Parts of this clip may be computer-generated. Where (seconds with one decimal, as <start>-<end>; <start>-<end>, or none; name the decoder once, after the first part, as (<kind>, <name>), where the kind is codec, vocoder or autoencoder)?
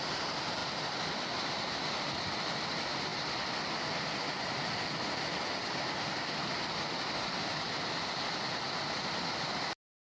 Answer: none